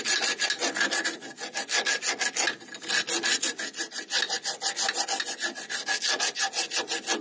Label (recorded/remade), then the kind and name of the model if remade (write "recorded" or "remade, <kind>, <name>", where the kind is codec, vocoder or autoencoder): recorded